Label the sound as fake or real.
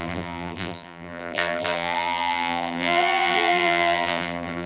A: fake